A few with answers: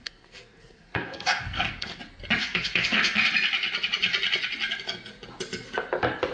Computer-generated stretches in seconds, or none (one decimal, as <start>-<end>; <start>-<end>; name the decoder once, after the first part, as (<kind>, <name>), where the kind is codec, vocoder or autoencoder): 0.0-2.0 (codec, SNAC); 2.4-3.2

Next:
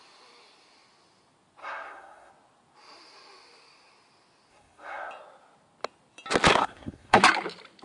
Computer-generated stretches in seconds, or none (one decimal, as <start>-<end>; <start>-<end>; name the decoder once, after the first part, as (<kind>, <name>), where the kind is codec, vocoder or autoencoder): 1.6-2.3 (codec, SNAC); 4.5-5.1; 6.6-7.2

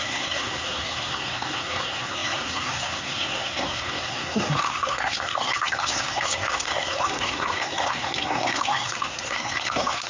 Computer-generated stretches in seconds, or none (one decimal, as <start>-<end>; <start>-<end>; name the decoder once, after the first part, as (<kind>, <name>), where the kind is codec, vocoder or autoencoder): 0.0-10.1 (codec, SNAC)

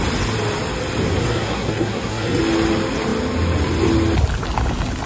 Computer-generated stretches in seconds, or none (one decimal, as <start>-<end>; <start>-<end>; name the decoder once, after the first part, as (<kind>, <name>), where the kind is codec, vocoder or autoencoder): 1.2-2.4 (codec, SNAC)